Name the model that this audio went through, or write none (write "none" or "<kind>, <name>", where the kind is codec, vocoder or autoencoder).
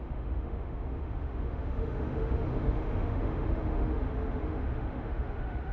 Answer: autoencoder, DAC-VAE